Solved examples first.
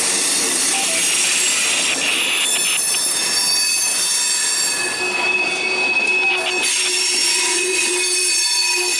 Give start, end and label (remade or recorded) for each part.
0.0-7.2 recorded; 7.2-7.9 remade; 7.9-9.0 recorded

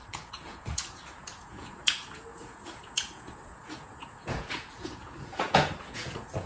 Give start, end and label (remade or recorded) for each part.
0.0-6.5 remade

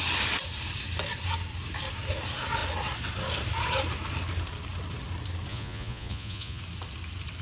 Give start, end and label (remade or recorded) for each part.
0.0-5.5 recorded; 5.5-6.6 remade; 6.6-7.4 recorded

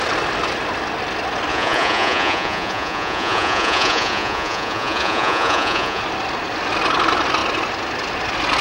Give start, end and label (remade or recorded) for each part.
0.0-1.5 recorded; 1.5-6.0 remade; 6.0-8.6 recorded

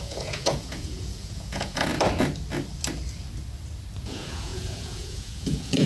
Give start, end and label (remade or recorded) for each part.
0.0-1.9 remade; 1.9-4.0 recorded; 4.0-5.9 remade

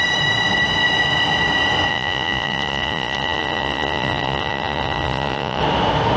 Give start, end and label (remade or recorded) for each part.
0.0-1.9 recorded; 1.9-5.6 remade; 5.6-6.2 recorded

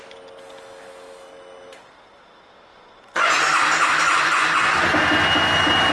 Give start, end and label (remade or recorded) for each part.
0.0-2.7 recorded; 2.7-3.3 remade; 3.3-4.1 recorded; 4.1-4.8 remade; 4.8-5.9 recorded

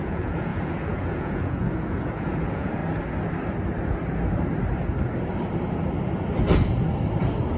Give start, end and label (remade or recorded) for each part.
0.0-2.8 remade; 2.8-7.6 recorded